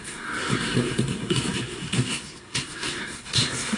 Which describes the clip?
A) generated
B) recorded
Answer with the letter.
A